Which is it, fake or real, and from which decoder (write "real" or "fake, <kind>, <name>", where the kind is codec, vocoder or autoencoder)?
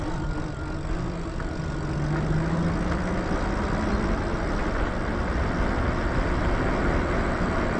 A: real